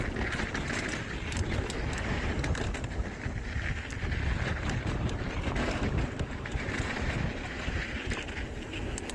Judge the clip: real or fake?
real